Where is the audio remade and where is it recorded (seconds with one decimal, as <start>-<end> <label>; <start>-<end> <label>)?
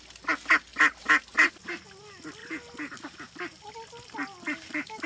0.0-5.1 recorded